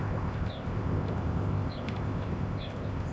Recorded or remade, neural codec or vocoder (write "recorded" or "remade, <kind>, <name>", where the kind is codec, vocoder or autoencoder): remade, codec, ZipCodec